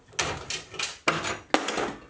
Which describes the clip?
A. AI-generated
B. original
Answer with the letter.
B